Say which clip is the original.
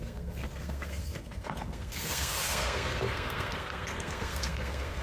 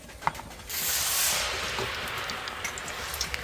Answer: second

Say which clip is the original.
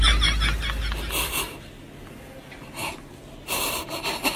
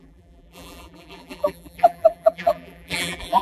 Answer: first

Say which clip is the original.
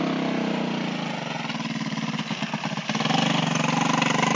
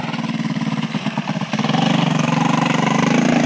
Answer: first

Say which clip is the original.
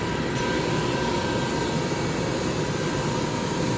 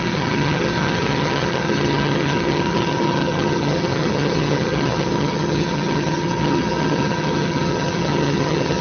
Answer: first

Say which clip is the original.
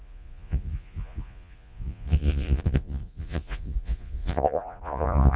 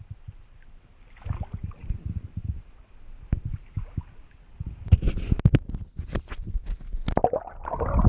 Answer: second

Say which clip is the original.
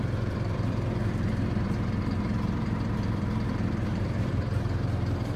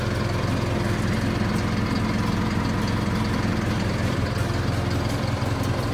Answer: second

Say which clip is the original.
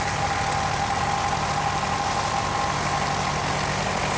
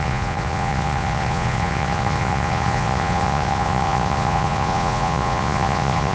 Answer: first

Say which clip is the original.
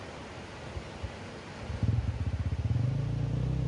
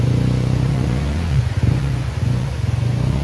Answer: first